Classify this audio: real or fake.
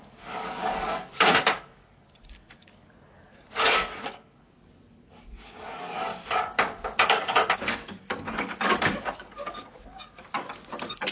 fake